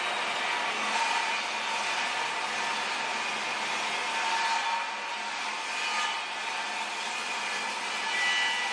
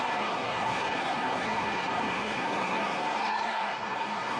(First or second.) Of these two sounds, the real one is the first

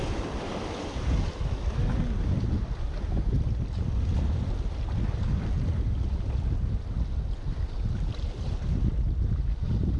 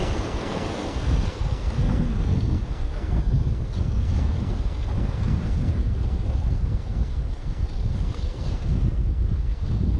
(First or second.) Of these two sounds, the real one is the first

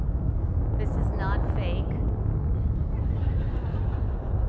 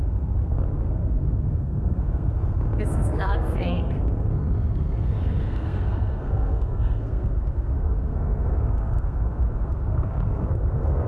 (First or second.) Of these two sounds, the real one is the first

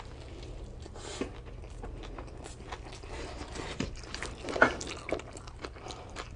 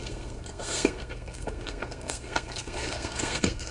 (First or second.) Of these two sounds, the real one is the first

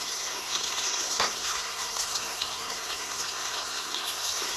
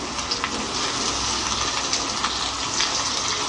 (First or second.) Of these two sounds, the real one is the second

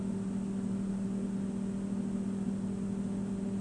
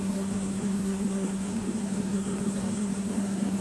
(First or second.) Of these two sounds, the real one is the first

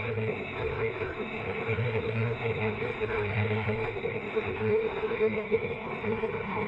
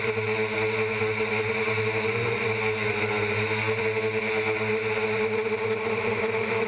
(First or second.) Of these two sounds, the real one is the second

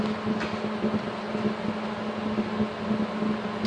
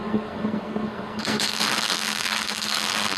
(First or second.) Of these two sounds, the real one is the first